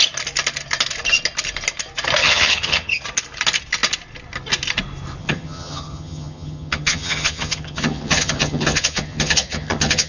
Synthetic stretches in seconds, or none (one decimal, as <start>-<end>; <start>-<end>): 2.2-3.0; 5.2-10.1